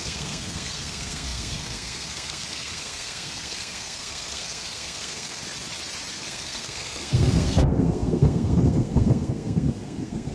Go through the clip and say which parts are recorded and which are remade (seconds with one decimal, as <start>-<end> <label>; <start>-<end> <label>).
0.0-5.4 remade; 5.4-6.1 recorded; 6.1-10.3 remade